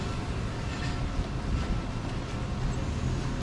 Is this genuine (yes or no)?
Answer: yes